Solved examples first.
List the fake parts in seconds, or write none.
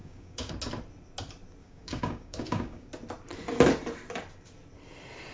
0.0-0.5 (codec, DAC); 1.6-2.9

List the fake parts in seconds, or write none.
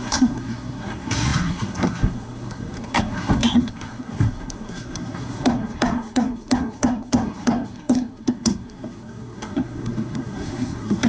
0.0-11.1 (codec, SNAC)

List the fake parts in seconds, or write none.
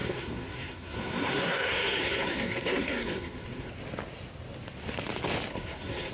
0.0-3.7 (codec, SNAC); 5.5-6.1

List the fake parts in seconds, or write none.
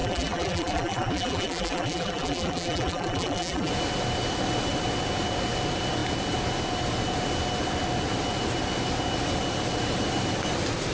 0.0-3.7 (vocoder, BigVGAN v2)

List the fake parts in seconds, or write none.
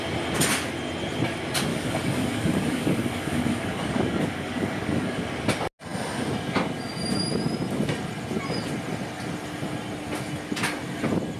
1.7-5.2 (codec, DAC)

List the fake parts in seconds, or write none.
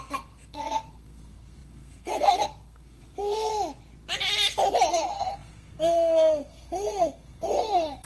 0.0-3.5 (codec, SNAC); 4.9-8.1